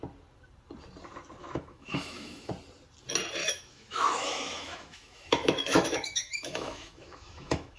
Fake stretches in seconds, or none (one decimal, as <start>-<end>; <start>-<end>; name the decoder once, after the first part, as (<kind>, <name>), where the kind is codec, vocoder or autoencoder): 1.4-2.5 (autoencoder, DAC-VAE); 3.4-7.8